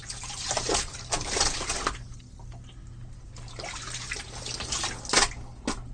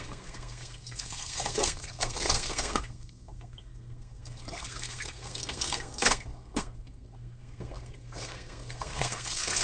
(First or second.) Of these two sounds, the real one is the first